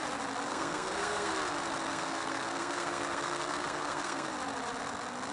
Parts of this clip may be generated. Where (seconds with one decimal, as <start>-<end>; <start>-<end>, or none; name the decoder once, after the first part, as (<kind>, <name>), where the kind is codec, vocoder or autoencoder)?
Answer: 0.5-1.3 (codec, SNAC); 1.9-4.3